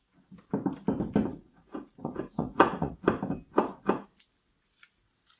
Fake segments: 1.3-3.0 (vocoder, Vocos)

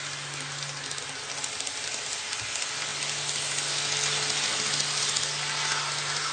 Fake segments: none